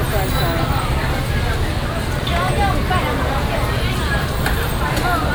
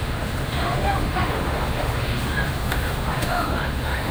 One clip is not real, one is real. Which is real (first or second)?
first